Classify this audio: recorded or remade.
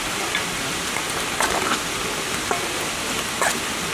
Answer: recorded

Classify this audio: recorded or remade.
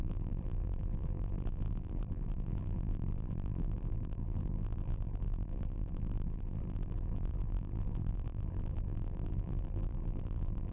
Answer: remade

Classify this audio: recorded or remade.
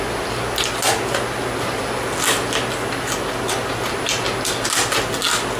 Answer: recorded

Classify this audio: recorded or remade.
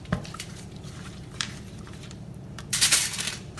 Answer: remade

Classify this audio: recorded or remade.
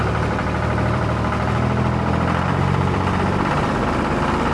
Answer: remade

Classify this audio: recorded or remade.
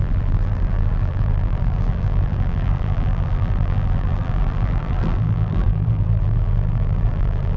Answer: remade